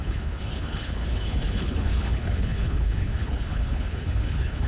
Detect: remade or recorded remade